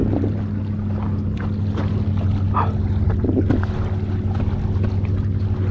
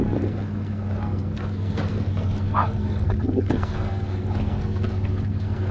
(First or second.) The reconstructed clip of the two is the second